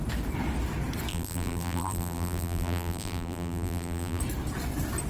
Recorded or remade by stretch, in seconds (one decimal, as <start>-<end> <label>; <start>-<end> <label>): 0.0-1.1 recorded; 1.1-4.2 remade; 4.2-5.1 recorded